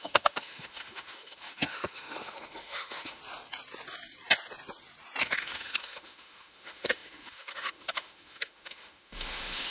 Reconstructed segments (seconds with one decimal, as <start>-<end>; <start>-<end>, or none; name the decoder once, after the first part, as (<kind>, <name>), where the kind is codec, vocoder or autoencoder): 0.0-3.2 (autoencoder, DAC-VAE); 5.2-9.7